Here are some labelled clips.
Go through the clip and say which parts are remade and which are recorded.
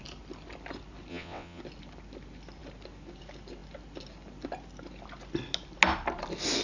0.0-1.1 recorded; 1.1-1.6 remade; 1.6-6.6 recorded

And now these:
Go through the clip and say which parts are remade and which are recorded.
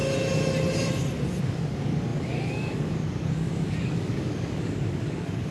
0.0-1.4 recorded; 1.4-5.5 remade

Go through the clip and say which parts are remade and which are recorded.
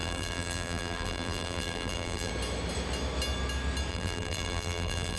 0.0-2.3 remade; 2.3-3.9 recorded; 3.9-5.2 remade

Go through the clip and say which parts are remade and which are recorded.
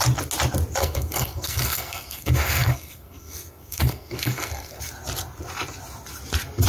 0.0-0.8 recorded; 0.8-4.8 remade; 4.8-6.7 recorded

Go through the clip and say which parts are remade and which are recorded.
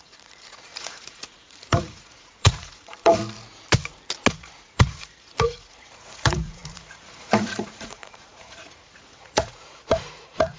0.0-3.2 remade; 3.2-4.3 recorded; 4.3-10.6 remade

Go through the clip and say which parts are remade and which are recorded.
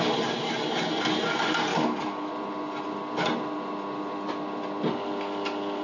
0.0-1.7 recorded; 1.7-2.3 remade; 2.3-5.8 recorded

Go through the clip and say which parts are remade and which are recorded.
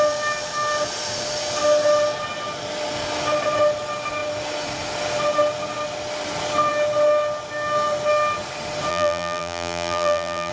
0.0-8.9 recorded; 8.9-10.5 remade